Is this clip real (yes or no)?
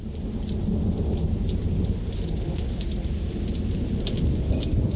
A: yes